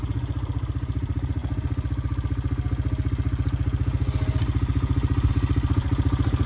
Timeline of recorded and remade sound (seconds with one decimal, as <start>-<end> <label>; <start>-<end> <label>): 0.0-6.5 recorded